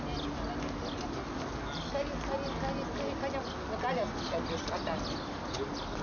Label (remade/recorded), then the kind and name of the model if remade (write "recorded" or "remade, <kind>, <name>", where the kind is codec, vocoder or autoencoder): recorded